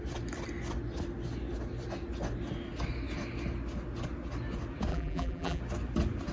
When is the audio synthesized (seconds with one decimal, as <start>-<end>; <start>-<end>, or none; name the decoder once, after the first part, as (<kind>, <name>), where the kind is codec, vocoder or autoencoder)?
4.9-5.6 (vocoder, BigVGAN v2)